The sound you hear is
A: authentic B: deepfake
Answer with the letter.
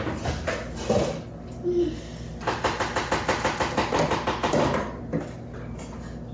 A